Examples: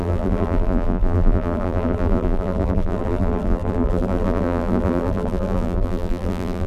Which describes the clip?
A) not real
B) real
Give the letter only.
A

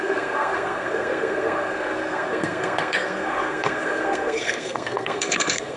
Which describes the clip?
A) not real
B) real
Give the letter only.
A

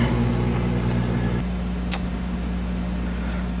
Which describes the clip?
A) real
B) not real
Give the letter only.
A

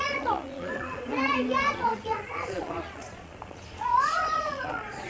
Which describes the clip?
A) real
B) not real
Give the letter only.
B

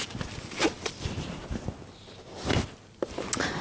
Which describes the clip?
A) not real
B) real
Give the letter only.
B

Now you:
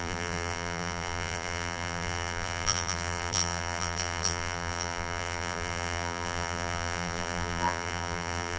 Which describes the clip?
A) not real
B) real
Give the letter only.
A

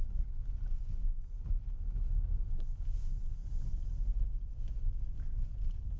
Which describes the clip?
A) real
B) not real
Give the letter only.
A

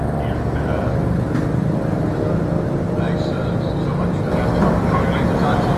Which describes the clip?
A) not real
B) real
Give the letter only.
B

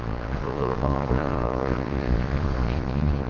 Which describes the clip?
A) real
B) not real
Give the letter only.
B